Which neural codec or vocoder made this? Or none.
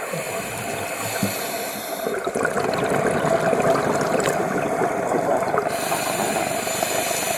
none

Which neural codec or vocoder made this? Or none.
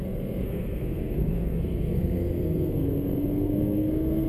codec, SNAC